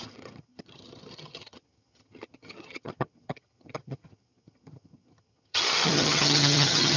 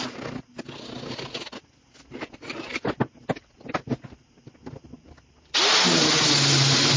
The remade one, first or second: first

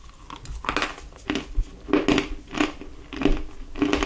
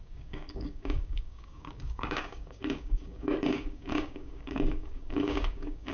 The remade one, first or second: second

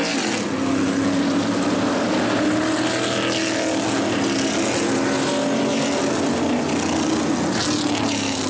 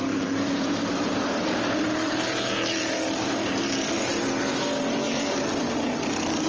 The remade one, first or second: second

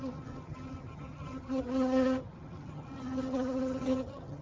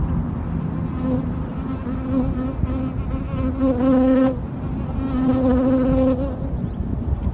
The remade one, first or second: first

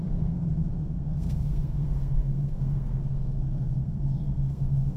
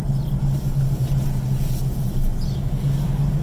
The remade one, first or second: first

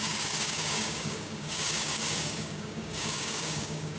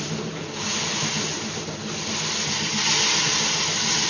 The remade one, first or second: first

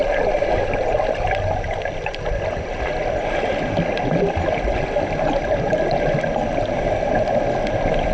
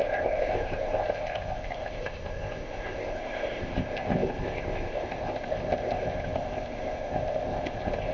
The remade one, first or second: second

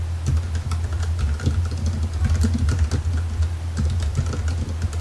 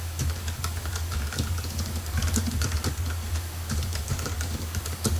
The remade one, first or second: second